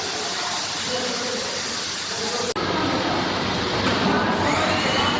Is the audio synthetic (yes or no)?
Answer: no